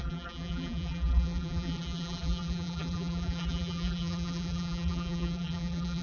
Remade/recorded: remade